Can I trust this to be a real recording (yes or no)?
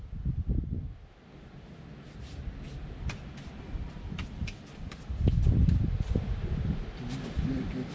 yes